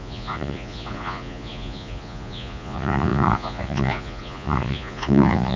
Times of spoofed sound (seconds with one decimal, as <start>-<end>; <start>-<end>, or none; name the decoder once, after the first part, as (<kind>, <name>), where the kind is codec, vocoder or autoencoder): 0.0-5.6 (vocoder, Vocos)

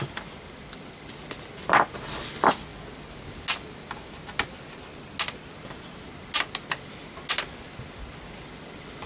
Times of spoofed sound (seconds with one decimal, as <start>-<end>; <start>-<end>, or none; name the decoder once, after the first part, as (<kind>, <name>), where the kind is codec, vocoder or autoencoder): none

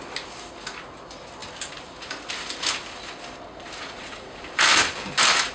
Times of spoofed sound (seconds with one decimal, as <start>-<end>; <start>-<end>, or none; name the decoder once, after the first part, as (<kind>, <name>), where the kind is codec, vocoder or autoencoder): 3.8-4.4 (vocoder, Vocos)

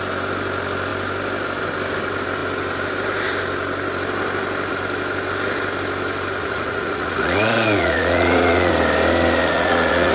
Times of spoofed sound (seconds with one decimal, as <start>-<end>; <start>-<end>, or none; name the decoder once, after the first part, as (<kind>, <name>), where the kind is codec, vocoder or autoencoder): 6.4-8.7 (vocoder, Vocos); 9.4-10.1

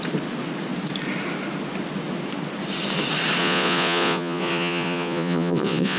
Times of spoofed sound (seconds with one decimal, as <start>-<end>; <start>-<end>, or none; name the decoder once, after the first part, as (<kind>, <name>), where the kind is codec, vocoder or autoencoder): 3.4-6.0 (vocoder, Vocos)

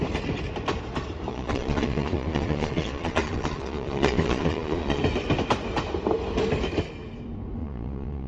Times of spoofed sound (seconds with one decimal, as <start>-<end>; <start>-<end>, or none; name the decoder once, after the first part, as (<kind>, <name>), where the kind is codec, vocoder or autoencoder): 1.3-5.0 (vocoder, Vocos); 7.6-8.3

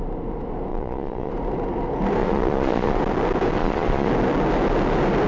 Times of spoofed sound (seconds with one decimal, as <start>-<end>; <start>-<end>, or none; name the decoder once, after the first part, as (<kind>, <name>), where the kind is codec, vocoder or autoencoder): 0.7-1.3 (vocoder, Vocos); 2.2-3.0; 3.6-4.1

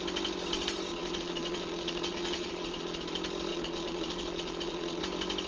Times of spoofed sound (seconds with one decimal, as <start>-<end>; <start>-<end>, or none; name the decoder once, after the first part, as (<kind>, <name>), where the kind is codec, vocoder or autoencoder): 0.9-3.0 (vocoder, Vocos); 3.5-5.0